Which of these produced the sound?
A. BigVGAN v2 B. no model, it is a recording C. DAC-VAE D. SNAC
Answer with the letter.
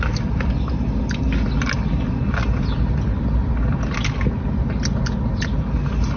B